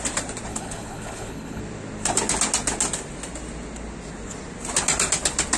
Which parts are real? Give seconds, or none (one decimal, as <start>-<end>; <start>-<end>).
0.0-0.5; 1.6-5.6